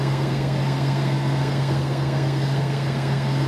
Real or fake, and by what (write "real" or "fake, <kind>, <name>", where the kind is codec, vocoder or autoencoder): fake, codec, SNAC